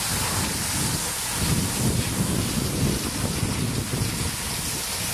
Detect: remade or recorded recorded